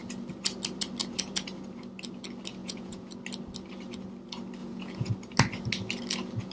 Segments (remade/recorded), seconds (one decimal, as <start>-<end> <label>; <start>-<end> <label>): 0.0-2.6 recorded; 2.6-3.1 remade; 3.1-4.6 recorded; 4.6-5.1 remade; 5.1-6.5 recorded